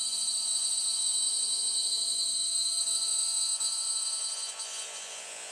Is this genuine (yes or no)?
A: no